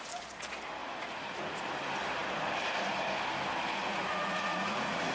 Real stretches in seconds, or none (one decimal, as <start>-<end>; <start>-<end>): 0.0-0.8; 1.6-3.8